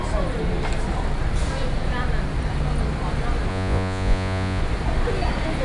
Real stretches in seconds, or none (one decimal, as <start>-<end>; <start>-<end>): 0.0-3.5; 4.6-5.6